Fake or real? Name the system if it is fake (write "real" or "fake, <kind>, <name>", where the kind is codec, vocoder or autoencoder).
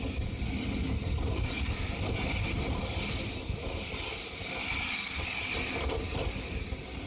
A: real